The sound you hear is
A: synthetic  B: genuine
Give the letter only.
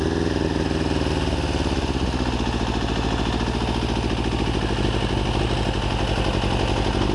B